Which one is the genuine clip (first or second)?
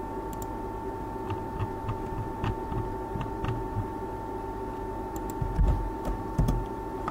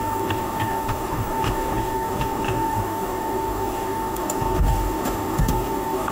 first